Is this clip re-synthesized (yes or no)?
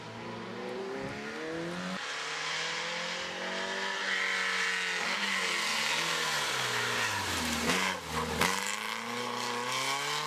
no